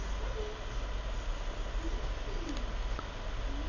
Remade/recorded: recorded